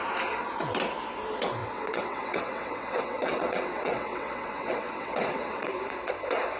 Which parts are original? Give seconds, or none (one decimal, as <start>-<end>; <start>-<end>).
0.0-1.6; 5.6-6.6